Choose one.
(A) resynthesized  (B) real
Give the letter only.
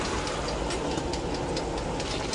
B